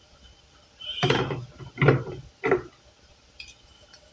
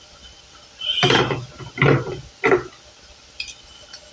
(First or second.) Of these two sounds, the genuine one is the second